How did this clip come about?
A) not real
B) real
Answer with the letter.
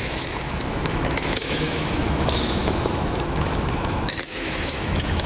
A